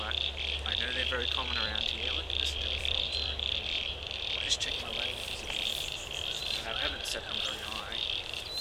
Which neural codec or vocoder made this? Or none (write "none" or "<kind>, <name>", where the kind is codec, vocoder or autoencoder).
vocoder, BigVGAN v2